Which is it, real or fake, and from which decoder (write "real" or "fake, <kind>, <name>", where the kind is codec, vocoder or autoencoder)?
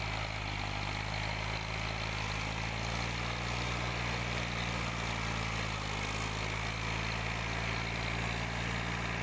real